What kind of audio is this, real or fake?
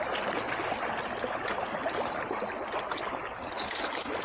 real